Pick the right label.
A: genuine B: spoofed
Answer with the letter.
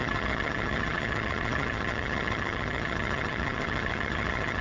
B